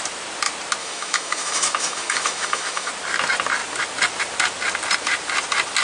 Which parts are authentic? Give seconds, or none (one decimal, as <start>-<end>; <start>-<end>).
0.0-0.8; 2.9-5.8